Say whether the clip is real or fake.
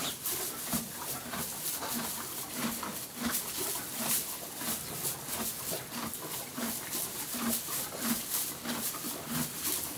fake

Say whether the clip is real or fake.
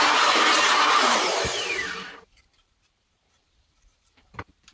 fake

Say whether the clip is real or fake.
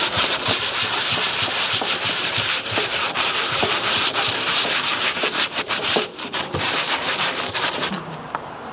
fake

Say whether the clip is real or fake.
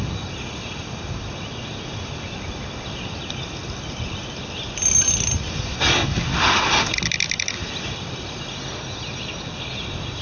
real